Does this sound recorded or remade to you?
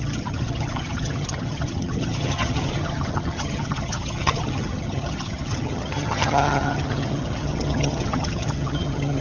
remade